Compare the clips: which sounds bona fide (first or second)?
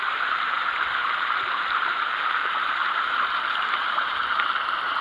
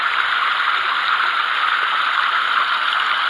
second